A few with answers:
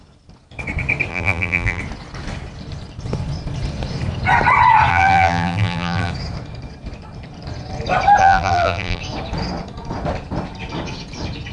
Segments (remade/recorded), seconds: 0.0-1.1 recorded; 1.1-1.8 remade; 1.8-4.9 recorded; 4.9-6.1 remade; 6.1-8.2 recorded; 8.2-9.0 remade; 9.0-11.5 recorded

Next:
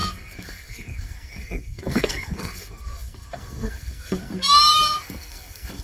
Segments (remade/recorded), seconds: 0.0-5.8 remade

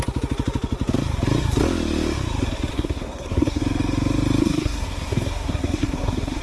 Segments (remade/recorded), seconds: 0.0-2.7 recorded; 2.7-3.6 remade; 3.6-4.4 recorded; 4.4-6.4 remade

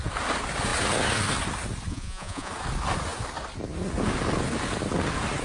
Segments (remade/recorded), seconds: 0.0-1.9 recorded; 1.9-2.5 remade; 2.5-5.4 recorded

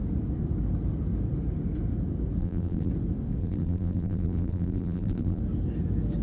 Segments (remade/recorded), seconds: 0.0-2.4 recorded; 2.4-2.9 remade; 2.9-3.4 recorded; 3.4-5.4 remade; 5.4-6.2 recorded

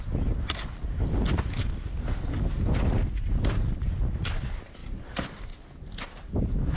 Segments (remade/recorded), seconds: 0.0-4.8 recorded; 4.8-5.7 remade; 5.7-6.8 recorded